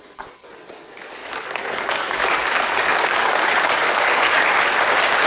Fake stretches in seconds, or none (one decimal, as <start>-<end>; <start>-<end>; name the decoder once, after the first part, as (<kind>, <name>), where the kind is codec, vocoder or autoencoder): 1.2-4.4 (codec, DAC)